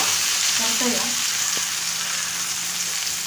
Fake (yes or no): no